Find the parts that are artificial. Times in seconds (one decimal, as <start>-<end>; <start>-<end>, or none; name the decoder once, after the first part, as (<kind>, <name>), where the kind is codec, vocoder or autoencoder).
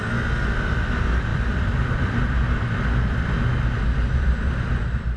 1.3-2.3 (vocoder, BigVGAN v2)